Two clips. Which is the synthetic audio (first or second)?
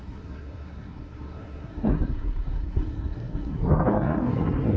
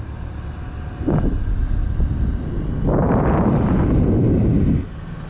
first